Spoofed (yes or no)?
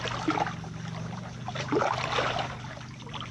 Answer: no